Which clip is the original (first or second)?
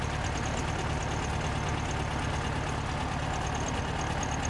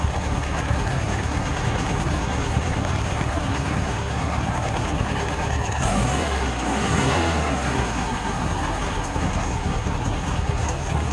first